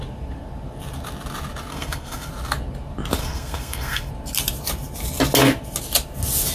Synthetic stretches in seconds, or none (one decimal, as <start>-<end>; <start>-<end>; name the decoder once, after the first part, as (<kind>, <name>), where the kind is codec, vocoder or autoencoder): 1.7-2.3 (codec, SNAC); 3.2-4.1